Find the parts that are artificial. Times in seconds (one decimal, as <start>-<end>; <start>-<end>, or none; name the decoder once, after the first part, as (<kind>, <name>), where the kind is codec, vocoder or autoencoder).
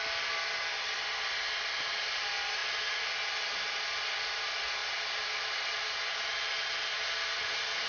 none